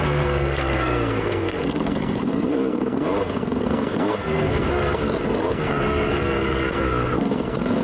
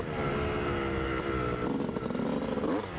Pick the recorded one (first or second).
second